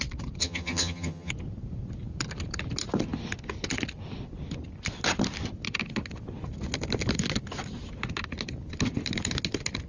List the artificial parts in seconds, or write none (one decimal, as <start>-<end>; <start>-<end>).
0.4-1.3